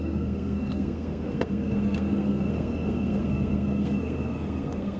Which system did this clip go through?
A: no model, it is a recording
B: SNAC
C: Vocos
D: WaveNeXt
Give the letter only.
B